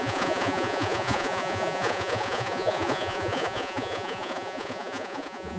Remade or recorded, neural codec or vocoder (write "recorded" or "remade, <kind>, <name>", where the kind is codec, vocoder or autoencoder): remade, vocoder, Vocos